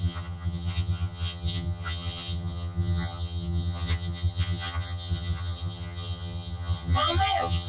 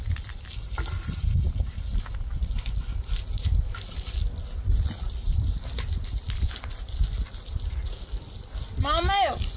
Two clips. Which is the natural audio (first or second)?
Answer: second